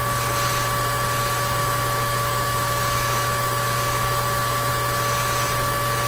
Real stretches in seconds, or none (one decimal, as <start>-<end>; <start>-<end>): 0.0-1.6; 4.7-6.1